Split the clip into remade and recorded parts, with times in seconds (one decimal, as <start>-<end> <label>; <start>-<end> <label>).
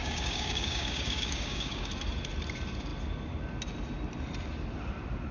0.0-1.9 remade; 1.9-5.3 recorded